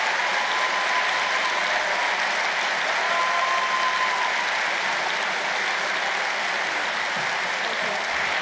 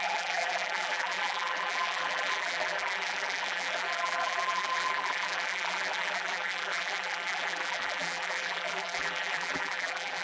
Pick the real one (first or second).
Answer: first